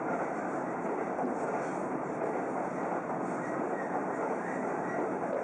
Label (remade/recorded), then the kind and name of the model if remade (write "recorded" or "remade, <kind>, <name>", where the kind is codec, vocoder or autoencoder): recorded